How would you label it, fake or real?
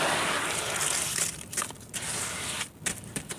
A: real